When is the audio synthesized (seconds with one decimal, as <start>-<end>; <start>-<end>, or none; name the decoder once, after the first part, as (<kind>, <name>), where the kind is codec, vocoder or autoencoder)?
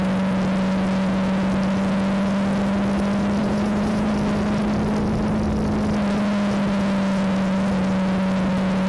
3.4-4.1 (vocoder, Vocos)